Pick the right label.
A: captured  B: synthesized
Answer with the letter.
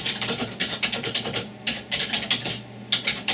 A